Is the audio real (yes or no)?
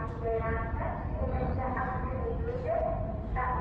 yes